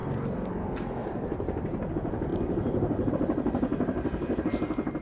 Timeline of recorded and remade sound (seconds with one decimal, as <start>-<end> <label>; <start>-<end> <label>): 0.0-0.5 remade; 0.5-1.0 recorded; 1.0-1.9 remade; 1.9-2.3 recorded; 2.3-3.1 remade; 3.1-3.7 recorded; 3.7-4.4 remade; 4.4-5.0 recorded

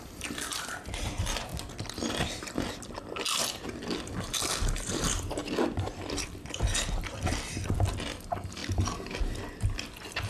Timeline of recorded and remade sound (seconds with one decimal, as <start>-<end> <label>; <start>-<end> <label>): 0.0-1.5 remade; 1.5-3.7 recorded; 3.7-5.4 remade; 5.4-6.2 recorded; 6.2-8.6 remade; 8.6-9.1 recorded; 9.1-10.3 remade

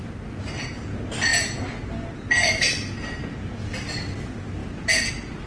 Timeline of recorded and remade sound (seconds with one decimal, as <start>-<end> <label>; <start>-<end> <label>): 0.0-4.6 recorded; 4.6-5.1 remade; 5.1-5.5 recorded